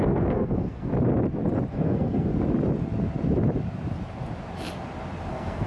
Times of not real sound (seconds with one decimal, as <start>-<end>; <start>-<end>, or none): 0.0-0.9; 1.7-2.3; 5.3-5.7